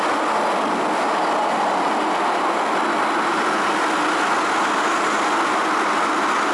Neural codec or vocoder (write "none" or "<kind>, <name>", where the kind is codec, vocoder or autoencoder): none